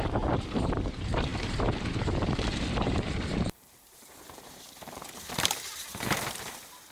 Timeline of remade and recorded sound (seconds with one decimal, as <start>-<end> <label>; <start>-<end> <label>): 0.0-6.9 remade